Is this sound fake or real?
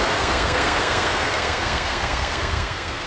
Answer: fake